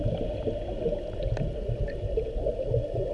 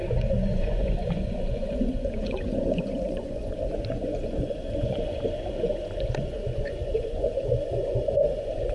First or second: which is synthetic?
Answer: second